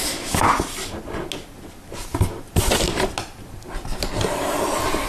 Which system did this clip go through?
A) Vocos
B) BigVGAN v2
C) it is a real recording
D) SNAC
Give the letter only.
C